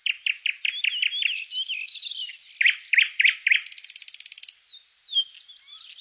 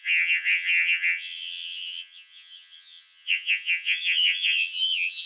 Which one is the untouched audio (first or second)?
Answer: first